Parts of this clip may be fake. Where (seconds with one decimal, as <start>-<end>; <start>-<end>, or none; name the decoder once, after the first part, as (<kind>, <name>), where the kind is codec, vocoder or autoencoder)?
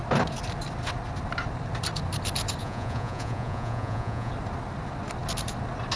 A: 2.6-4.3 (vocoder, Vocos)